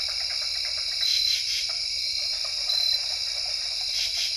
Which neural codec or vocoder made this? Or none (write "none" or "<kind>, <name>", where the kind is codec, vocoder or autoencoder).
none